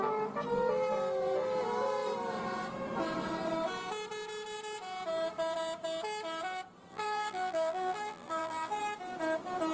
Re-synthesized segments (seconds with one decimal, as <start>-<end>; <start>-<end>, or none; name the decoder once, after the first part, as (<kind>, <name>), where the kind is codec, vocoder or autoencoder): 6.9-8.8 (vocoder, BigVGAN v2)